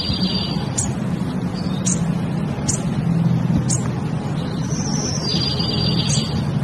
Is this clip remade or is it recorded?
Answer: recorded